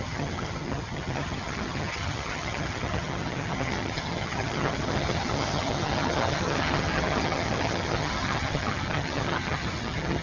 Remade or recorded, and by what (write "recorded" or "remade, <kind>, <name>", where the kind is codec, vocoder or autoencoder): remade, vocoder, HiFi-GAN